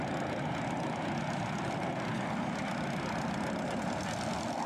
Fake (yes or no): no